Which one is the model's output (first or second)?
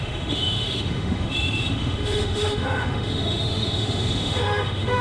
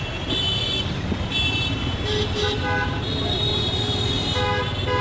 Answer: first